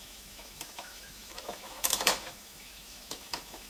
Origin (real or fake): fake